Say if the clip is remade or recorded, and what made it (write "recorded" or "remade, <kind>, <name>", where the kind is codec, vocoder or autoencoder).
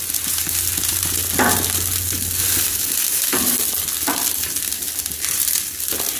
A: recorded